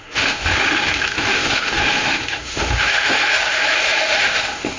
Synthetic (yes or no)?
yes